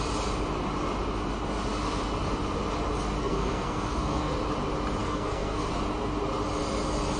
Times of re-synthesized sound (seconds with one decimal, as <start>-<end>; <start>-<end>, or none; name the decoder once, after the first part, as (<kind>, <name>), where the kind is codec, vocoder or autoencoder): 3.2-4.3 (codec, SNAC); 5.0-5.7